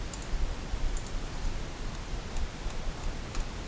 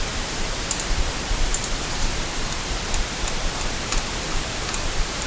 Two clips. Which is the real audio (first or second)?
first